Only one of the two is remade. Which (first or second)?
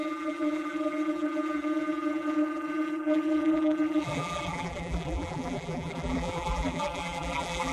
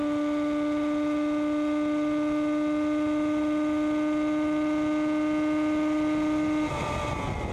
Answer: first